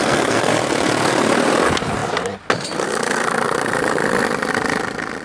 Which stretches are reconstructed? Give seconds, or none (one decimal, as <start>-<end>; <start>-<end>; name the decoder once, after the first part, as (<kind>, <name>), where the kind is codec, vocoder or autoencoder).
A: 0.0-0.5 (codec, SNAC)